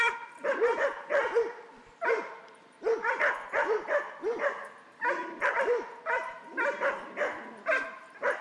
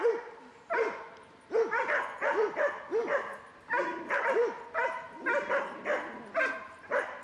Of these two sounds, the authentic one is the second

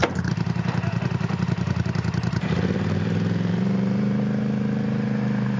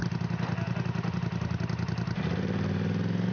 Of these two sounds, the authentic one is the second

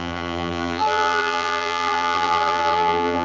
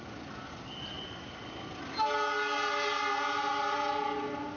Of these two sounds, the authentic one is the second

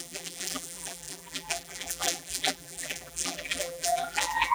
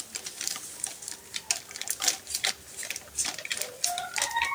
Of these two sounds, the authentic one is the second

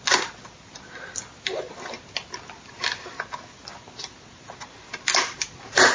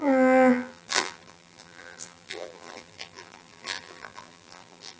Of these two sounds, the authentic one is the first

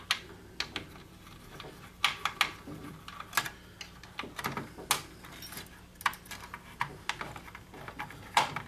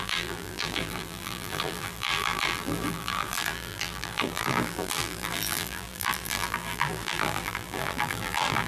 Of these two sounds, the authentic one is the first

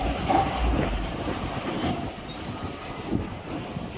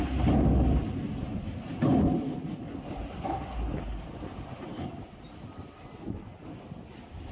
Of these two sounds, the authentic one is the second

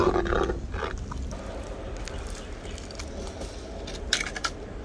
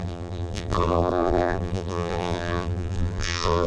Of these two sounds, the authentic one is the first